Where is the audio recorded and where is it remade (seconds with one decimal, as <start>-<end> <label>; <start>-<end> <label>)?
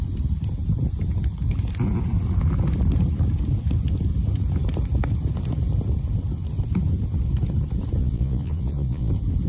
0.0-8.0 recorded; 8.0-9.1 remade; 9.1-9.5 recorded